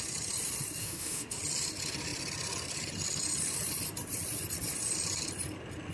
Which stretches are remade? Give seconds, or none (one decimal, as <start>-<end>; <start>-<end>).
0.8-1.4